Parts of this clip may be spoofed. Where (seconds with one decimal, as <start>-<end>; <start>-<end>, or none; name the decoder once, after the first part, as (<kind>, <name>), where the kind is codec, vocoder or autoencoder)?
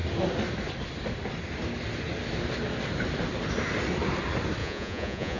4.6-5.4 (vocoder, Vocos)